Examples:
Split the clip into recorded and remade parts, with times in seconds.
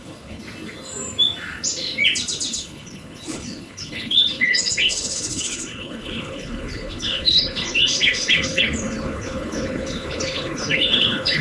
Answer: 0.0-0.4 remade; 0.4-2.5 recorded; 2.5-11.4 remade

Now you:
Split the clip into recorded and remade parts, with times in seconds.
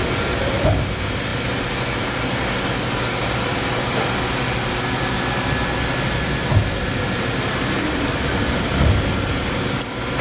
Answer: 0.0-10.2 recorded